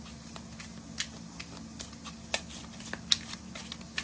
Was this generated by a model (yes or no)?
no